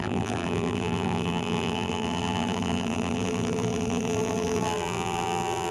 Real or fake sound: fake